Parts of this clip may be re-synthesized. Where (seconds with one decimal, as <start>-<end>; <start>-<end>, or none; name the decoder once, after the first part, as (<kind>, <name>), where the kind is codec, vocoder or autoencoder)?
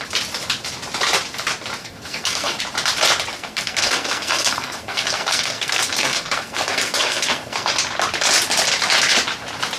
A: 1.8-2.6 (codec, SNAC); 3.3-7.7